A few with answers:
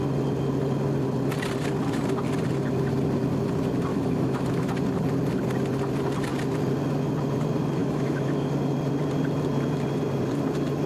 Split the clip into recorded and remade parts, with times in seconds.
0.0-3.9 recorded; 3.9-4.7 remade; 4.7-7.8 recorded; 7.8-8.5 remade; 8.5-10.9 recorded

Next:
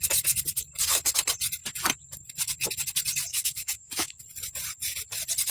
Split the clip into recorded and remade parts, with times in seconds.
0.0-3.3 recorded; 3.3-4.2 remade; 4.2-5.5 recorded

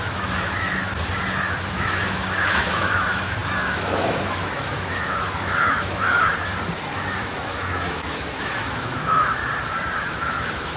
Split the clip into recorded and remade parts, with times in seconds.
0.0-0.9 remade; 0.9-1.7 recorded; 1.7-6.3 remade; 6.3-6.9 recorded; 6.9-9.4 remade; 9.4-10.0 recorded; 10.0-10.8 remade

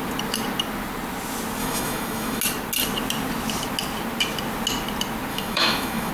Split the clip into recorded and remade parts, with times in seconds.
0.0-1.6 recorded; 1.6-2.4 remade; 2.4-5.3 recorded; 5.3-6.1 remade

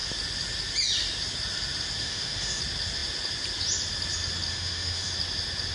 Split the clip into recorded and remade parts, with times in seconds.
0.0-2.0 recorded; 2.0-2.6 remade; 2.6-4.5 recorded; 4.5-5.1 remade; 5.1-5.7 recorded